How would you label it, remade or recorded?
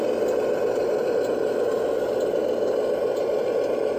recorded